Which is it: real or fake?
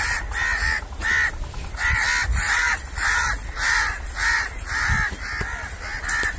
real